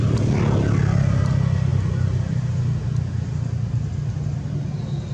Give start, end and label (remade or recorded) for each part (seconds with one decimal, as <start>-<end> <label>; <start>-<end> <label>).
0.0-5.1 recorded